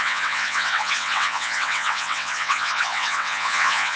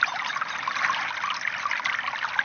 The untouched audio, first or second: second